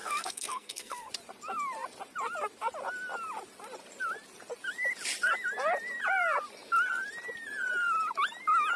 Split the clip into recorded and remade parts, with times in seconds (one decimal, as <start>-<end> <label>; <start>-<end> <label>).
0.0-1.1 remade; 1.1-8.8 recorded